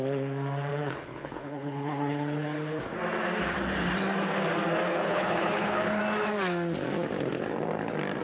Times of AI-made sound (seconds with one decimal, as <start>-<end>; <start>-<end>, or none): 0.7-2.8; 4.9-6.0